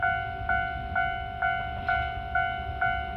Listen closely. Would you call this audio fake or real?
real